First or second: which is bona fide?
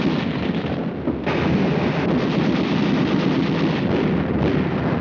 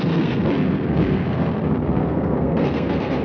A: first